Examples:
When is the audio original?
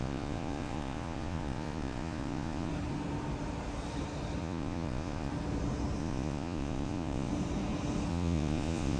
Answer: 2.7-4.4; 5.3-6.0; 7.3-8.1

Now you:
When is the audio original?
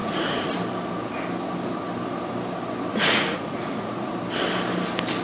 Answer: 0.5-2.9; 4.1-5.2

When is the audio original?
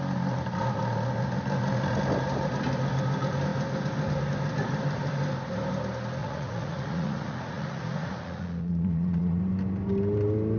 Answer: 0.0-6.2; 9.4-10.6